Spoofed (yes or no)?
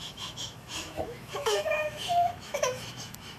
yes